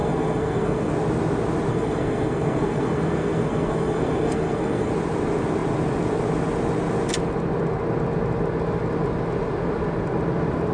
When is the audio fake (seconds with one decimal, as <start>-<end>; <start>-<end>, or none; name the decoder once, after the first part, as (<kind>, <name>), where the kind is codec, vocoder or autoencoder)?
0.0-0.9 (codec, SNAC); 1.7-4.9

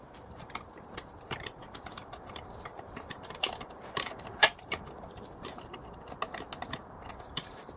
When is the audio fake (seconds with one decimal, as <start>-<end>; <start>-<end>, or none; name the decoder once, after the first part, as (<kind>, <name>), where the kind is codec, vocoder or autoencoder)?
0.0-5.8 (vocoder, BigVGAN v2); 7.1-7.8

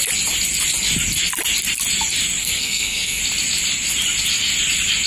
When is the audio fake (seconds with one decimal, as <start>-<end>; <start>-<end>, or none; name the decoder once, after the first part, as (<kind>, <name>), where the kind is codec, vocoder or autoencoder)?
2.4-3.2 (codec, SNAC)

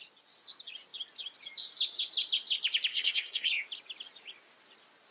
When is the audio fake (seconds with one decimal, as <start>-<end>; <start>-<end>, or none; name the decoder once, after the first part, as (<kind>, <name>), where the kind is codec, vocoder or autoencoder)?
2.9-3.5 (codec, SNAC)

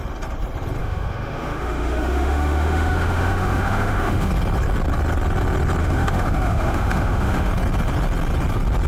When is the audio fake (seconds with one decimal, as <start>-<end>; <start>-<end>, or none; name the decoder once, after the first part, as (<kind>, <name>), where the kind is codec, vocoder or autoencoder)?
0.8-4.3 (autoencoder, DAC-VAE); 5.8-7.5

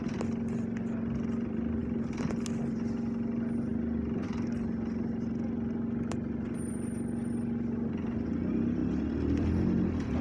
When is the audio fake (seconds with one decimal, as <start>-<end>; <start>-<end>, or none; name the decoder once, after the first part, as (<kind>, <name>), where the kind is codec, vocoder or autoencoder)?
none

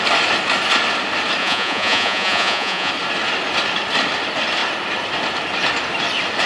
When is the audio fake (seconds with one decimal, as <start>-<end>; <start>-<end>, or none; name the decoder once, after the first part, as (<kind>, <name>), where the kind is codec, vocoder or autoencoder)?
1.4-2.9 (vocoder, Vocos)

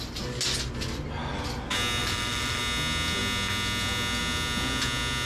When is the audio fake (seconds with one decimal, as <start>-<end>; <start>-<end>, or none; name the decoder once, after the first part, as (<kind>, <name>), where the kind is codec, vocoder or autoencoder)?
2.0-2.6 (vocoder, BigVGAN v2)